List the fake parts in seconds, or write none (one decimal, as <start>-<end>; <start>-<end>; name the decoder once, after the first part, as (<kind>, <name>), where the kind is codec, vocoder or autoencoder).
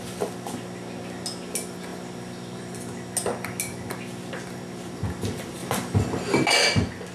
none